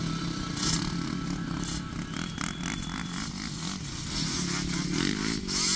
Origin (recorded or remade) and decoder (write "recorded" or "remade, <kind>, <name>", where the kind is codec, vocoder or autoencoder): recorded